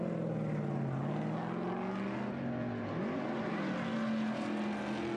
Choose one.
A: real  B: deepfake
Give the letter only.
A